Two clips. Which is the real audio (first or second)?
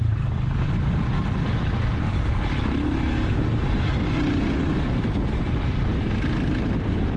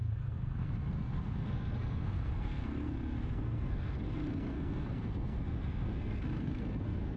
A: first